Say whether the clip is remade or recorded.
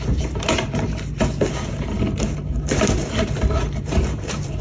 remade